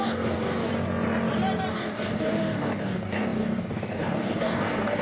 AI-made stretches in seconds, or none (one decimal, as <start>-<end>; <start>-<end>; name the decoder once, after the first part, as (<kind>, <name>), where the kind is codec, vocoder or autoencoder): 0.0-0.7 (codec, DAC); 1.7-5.0